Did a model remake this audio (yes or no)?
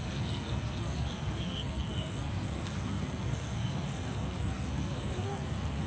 yes